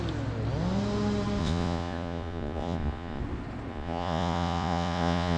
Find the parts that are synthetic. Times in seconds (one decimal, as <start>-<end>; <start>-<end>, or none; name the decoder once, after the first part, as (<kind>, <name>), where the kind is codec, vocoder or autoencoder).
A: 1.4-3.2 (vocoder, Vocos); 3.7-5.4